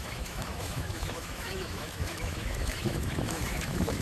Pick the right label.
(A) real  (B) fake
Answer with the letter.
B